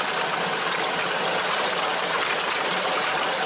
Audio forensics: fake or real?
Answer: real